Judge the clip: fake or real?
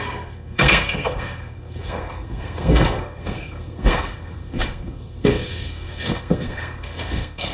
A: fake